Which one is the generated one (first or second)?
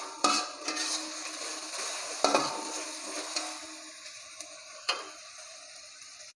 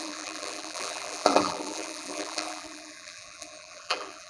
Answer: second